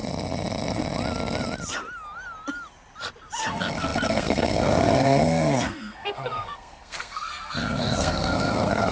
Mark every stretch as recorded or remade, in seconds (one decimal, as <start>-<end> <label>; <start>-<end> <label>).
0.0-3.5 recorded; 3.5-8.9 remade